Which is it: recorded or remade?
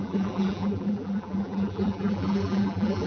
remade